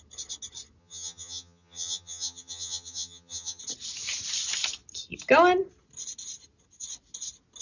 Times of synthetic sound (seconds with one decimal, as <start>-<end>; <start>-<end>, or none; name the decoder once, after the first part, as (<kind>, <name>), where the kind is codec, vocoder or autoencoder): 0.8-3.6 (vocoder, HiFi-GAN)